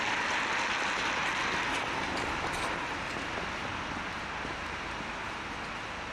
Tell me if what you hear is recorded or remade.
recorded